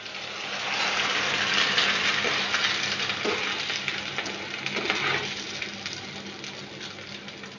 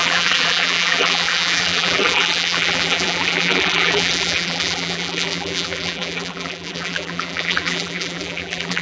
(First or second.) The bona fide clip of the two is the first